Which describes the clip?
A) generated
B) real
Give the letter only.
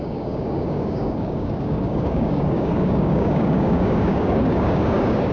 A